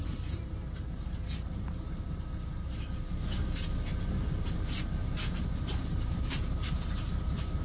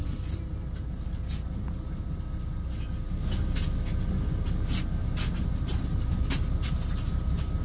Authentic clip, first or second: second